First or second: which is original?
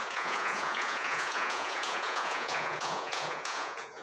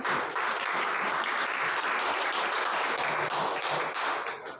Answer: second